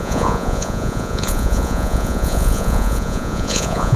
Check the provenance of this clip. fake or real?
fake